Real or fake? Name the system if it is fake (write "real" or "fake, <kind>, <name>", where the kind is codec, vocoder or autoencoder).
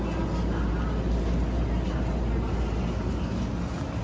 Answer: real